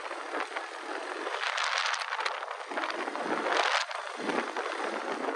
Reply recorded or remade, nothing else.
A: recorded